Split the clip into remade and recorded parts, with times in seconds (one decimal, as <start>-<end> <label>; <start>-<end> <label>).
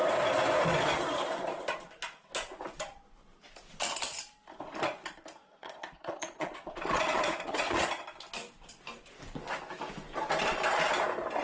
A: 0.0-5.4 recorded; 5.4-8.0 remade; 8.0-11.4 recorded